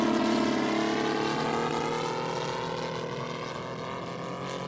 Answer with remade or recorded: recorded